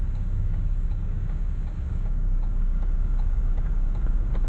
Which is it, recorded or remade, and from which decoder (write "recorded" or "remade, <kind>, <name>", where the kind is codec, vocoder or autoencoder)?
remade, codec, DAC